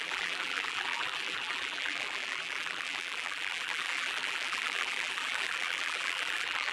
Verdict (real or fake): fake